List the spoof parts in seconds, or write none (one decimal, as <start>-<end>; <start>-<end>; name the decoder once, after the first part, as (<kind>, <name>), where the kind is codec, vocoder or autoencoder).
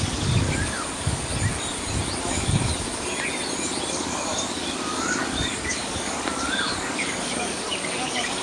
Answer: 0.0-1.3 (codec, DAC); 2.2-2.7; 3.9-8.4